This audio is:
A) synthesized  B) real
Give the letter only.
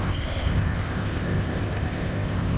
A